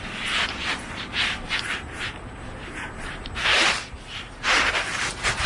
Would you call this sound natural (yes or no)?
no